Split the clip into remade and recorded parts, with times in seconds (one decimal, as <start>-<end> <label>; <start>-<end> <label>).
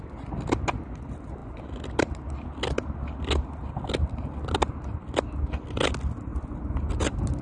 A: 0.0-7.4 recorded